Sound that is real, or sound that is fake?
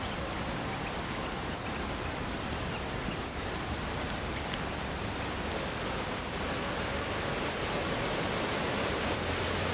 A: real